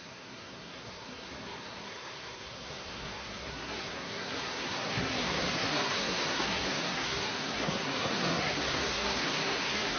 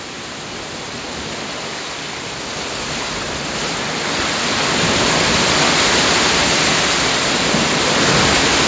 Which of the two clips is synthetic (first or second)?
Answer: first